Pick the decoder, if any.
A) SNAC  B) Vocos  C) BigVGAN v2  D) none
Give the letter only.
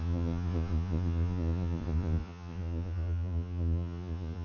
B